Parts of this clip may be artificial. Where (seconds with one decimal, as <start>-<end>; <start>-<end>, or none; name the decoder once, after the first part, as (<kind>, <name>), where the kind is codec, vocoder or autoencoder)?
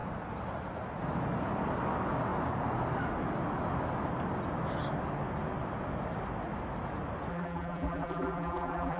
7.3-9.0 (vocoder, BigVGAN v2)